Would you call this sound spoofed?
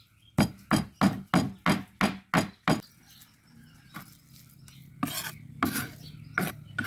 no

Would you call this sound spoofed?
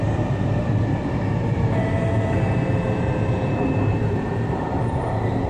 yes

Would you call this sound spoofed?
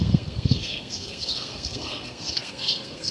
yes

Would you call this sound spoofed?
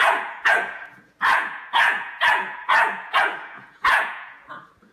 yes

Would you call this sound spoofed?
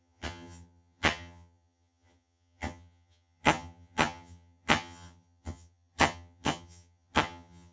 yes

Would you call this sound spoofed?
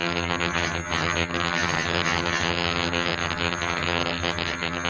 yes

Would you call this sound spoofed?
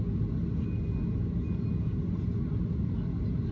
no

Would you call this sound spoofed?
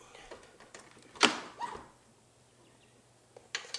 no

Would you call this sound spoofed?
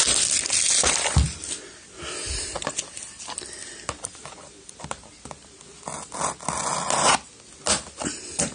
no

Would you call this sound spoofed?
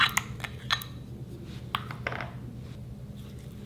no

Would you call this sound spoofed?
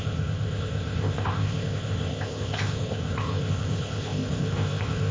yes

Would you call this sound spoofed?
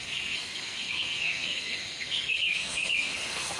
yes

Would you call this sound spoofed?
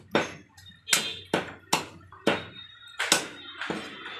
no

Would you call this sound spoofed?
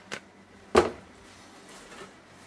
no